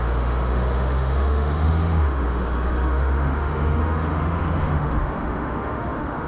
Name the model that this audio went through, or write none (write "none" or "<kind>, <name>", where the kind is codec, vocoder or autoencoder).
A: autoencoder, DAC-VAE